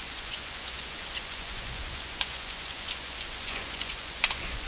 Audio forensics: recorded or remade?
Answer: remade